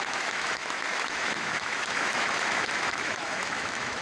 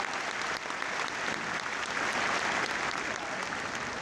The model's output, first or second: first